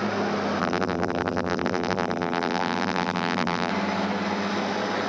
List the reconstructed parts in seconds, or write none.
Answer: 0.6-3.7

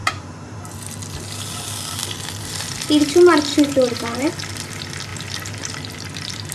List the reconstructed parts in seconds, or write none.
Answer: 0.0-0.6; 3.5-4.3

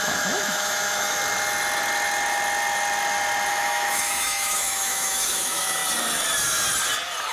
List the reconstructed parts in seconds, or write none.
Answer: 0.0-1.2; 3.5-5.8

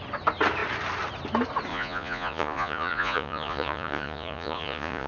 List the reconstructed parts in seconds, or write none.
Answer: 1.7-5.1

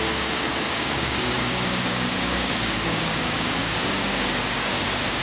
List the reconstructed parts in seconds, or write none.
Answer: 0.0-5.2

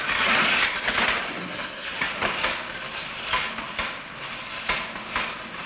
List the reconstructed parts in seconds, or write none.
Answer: 1.4-2.1